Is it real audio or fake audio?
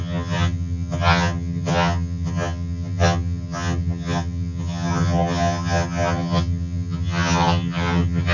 fake